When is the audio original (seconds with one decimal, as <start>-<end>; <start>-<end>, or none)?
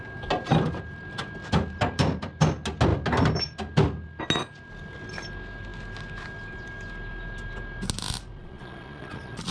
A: 0.0-8.4